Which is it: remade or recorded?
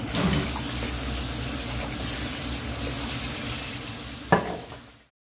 recorded